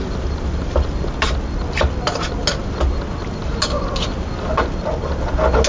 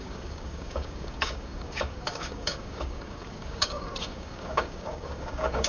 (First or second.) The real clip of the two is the first